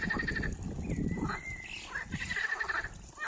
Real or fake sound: real